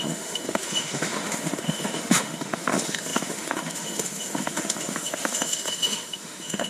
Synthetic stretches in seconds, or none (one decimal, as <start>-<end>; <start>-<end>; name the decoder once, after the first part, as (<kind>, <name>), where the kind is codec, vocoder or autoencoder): 0.0-6.7 (autoencoder, DAC-VAE)